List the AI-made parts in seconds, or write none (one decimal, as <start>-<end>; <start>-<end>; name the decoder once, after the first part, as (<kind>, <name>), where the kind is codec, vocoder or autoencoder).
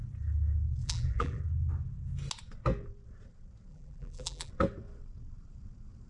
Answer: 0.8-1.4 (vocoder, BigVGAN v2); 3.7-4.5